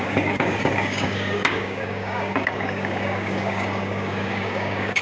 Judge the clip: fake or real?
fake